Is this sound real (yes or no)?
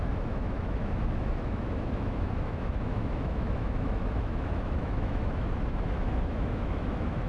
no